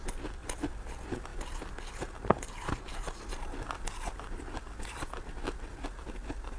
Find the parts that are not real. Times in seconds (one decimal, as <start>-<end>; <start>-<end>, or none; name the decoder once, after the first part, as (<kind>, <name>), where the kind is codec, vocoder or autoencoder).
0.4-0.9 (vocoder, BigVGAN v2)